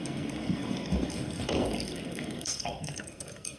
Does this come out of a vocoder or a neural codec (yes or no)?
yes